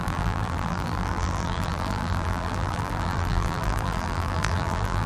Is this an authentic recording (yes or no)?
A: no